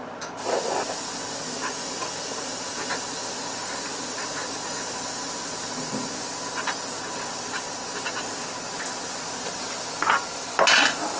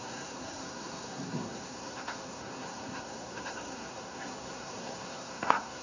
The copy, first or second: second